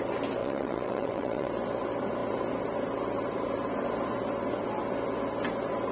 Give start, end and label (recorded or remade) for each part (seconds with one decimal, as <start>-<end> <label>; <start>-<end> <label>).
0.0-0.4 recorded; 0.4-1.5 remade; 1.5-5.9 recorded